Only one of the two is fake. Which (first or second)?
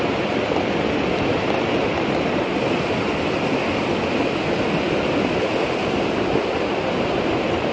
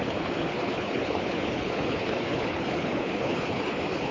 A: second